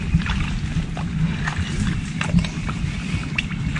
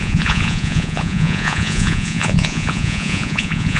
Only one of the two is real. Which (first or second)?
first